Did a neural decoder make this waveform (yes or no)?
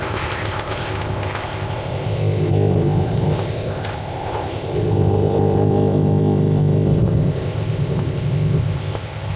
yes